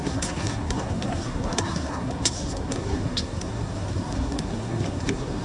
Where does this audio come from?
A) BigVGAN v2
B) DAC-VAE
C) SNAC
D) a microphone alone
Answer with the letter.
C